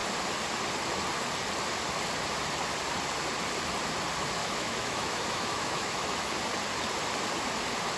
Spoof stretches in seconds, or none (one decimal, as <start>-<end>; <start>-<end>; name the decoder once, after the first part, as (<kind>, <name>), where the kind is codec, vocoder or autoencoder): 4.4-6.3 (autoencoder, DAC-VAE)